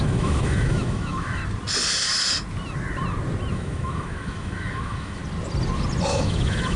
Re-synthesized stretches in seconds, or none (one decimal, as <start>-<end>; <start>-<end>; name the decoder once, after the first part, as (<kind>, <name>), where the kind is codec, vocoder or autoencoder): 0.0-1.4 (autoencoder, DAC-VAE); 3.5-5.2; 6.1-6.8